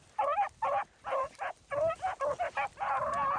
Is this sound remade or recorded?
recorded